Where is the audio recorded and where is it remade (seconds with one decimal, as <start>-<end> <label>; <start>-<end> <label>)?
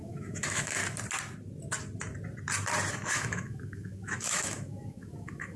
0.0-0.8 remade; 0.8-2.9 recorded; 2.9-5.6 remade